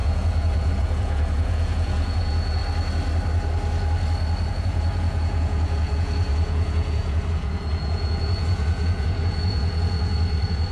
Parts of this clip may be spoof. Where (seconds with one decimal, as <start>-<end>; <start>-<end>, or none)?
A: 0.0-2.6; 4.5-10.7